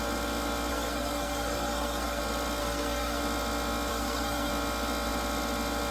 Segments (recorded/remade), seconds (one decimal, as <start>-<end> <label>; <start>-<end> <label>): 0.0-0.7 recorded; 0.7-2.2 remade; 2.2-2.6 recorded; 2.6-3.2 remade; 3.2-3.9 recorded; 3.9-4.5 remade; 4.5-5.9 recorded